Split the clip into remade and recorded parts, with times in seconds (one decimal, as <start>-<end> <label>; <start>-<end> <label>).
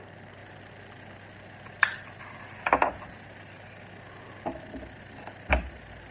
0.0-6.1 recorded